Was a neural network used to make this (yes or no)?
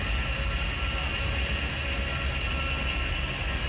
no